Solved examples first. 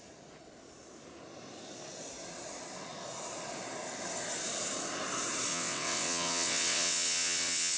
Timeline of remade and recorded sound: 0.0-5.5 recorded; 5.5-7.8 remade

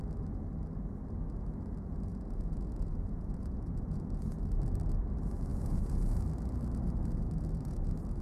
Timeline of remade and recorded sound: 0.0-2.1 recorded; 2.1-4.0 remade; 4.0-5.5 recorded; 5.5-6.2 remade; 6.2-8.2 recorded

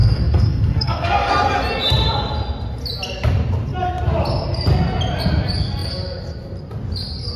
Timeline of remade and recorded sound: 0.0-1.3 remade; 1.3-7.4 recorded

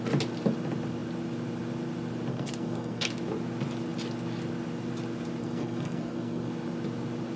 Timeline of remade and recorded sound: 0.0-2.3 recorded; 2.3-3.1 remade; 3.1-5.4 recorded; 5.4-6.5 remade; 6.5-7.4 recorded

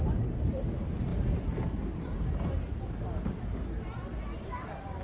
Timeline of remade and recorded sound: 0.0-5.0 recorded